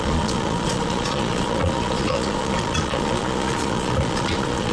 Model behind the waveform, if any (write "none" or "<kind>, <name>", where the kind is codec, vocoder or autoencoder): vocoder, Vocos